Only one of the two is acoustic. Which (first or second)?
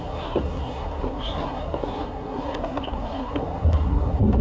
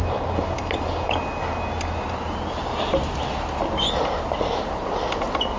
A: second